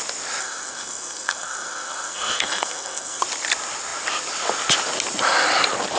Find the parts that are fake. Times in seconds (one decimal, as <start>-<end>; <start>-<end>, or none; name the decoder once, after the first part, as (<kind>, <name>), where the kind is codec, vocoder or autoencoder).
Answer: 0.4-3.2 (codec, SNAC)